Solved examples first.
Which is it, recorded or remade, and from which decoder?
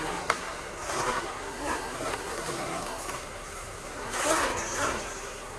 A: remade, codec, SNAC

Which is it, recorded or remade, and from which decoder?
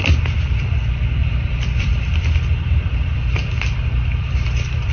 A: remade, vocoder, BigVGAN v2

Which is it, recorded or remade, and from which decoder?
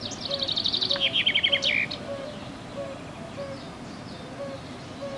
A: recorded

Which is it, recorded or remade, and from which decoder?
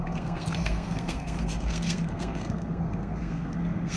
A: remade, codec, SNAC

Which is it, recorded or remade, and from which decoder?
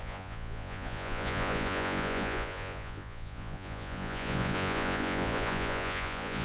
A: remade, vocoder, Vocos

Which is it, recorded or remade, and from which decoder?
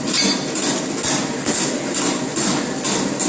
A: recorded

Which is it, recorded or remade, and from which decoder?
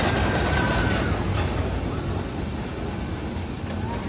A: recorded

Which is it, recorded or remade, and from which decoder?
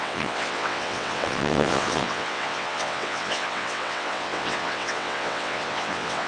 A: remade, vocoder, WaveNeXt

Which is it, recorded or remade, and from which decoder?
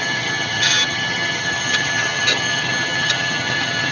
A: remade, vocoder, HiFi-GAN